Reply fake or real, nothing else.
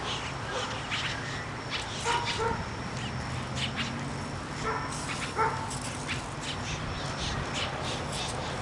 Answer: real